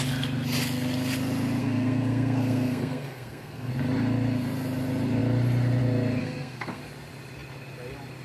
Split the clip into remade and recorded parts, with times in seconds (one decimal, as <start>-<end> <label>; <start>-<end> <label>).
0.0-1.6 recorded; 1.6-3.7 remade; 3.7-6.2 recorded; 6.2-6.8 remade; 6.8-8.2 recorded